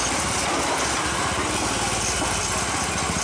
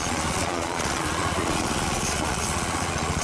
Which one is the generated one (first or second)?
second